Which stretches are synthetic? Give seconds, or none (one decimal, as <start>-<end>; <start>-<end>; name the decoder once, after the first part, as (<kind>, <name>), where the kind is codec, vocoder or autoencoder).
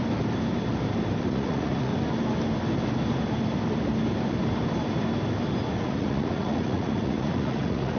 1.2-1.9 (vocoder, Vocos); 5.8-8.0